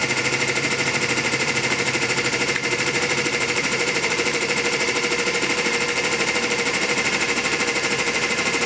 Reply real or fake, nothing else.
fake